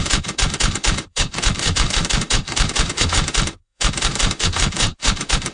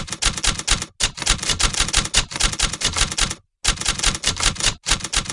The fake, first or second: first